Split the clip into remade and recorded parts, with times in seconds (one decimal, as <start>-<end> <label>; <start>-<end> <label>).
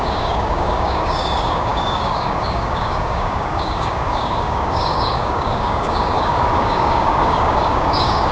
0.0-8.3 remade